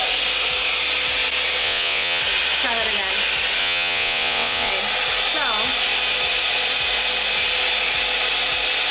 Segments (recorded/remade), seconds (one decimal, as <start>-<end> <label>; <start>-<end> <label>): 0.0-1.6 recorded; 1.6-2.2 remade; 2.2-3.6 recorded; 3.6-4.7 remade; 4.7-8.9 recorded